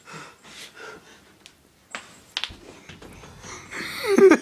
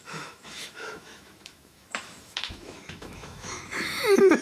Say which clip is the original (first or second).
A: first